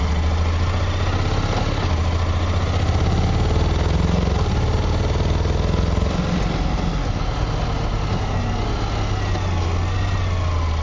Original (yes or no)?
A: yes